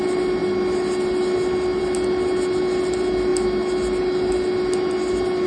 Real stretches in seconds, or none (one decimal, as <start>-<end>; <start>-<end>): 0.0-5.5